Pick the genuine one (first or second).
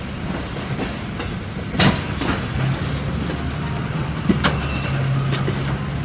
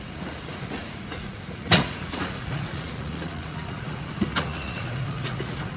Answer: first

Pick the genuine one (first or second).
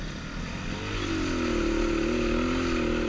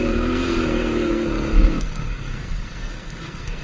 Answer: first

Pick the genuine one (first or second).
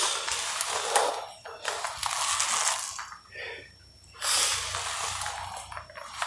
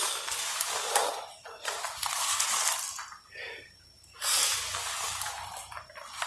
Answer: first